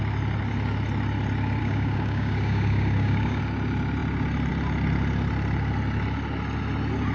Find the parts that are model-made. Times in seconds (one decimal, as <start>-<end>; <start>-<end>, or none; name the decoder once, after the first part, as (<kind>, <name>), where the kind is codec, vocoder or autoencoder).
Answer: 1.6-3.4 (codec, DAC)